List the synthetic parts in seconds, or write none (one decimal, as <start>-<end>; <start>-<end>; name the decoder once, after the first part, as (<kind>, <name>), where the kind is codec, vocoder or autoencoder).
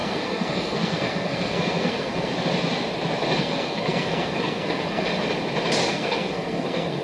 0.0-2.3 (codec, SNAC); 3.4-5.1; 5.9-7.0